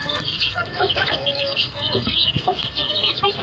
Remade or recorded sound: remade